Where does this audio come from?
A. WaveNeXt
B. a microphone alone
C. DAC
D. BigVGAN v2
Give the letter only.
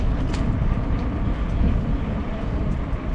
D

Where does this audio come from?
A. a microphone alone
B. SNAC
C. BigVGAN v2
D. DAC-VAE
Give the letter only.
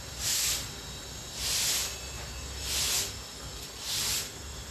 A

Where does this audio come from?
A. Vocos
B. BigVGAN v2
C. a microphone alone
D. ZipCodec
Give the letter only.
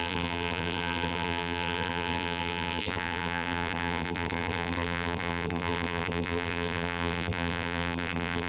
B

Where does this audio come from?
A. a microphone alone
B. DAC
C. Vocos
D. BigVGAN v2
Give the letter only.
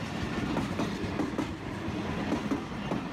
A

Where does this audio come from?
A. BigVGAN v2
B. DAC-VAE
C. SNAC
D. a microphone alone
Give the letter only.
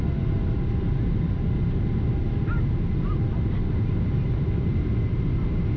D